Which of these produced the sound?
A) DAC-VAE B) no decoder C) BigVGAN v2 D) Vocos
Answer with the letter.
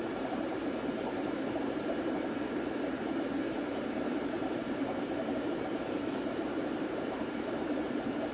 C